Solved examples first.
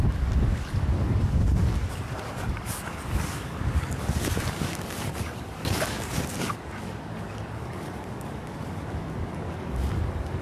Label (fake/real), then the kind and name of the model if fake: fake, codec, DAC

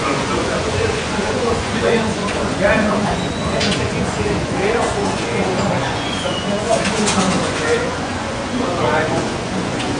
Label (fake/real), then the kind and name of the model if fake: fake, vocoder, Vocos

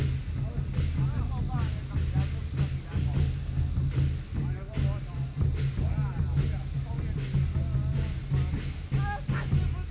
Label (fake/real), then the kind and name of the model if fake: real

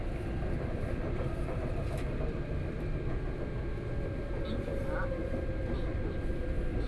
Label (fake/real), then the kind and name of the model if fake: fake, vocoder, BigVGAN v2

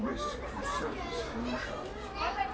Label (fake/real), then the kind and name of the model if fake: real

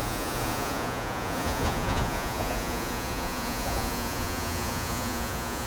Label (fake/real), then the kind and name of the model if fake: fake, vocoder, Vocos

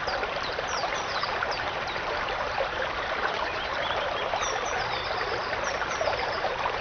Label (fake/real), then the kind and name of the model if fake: fake, vocoder, BigVGAN v2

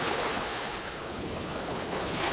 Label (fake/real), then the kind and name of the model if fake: fake, codec, HILCodec